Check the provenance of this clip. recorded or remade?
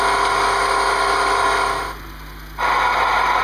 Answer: recorded